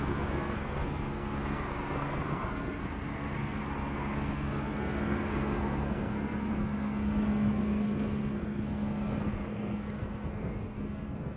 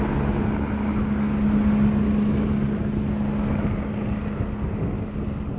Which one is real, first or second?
second